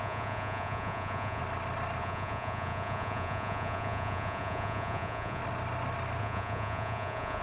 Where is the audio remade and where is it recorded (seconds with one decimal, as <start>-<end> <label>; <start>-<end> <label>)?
0.0-1.4 remade; 1.4-2.0 recorded; 2.0-5.4 remade; 5.4-6.2 recorded; 6.2-7.4 remade